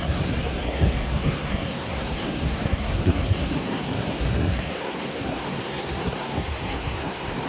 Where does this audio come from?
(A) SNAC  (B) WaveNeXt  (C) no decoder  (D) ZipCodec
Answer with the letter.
A